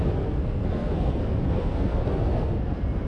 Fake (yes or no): yes